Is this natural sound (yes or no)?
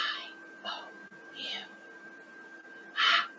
yes